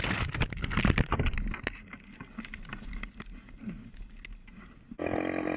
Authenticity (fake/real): real